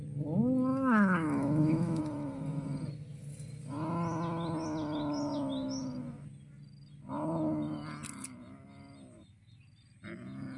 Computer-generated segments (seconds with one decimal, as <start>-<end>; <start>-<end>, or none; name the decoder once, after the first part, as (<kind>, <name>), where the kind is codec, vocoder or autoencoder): 0.7-2.0 (autoencoder, DAC-VAE)